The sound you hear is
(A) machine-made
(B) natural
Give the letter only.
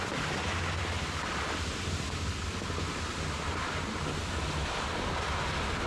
B